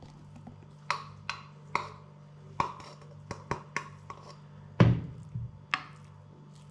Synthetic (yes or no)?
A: no